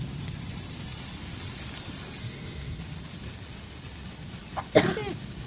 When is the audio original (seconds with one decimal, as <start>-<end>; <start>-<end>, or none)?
0.0-2.2; 2.8-5.5